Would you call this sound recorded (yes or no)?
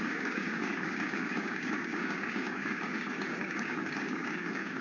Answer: no